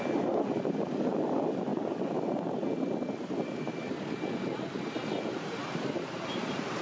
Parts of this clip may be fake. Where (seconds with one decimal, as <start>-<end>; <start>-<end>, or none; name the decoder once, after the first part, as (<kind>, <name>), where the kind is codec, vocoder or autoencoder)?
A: 5.6-6.8 (vocoder, BigVGAN v2)